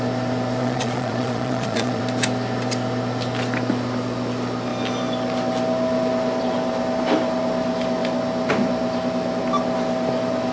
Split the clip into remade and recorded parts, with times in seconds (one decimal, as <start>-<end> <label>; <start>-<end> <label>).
0.0-0.6 recorded; 0.6-2.0 remade; 2.0-10.5 recorded